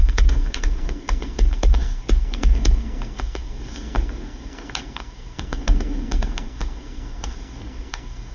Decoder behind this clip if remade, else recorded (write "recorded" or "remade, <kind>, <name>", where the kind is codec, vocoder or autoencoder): remade, codec, SNAC